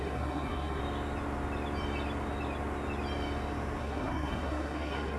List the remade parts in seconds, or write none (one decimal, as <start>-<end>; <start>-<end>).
0.0-0.8; 3.8-5.2